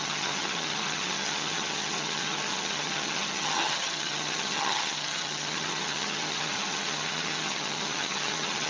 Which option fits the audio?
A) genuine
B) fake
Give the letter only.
B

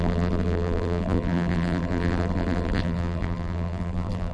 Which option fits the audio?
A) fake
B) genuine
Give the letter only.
A